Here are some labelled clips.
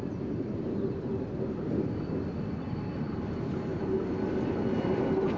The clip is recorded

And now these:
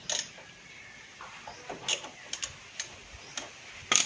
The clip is recorded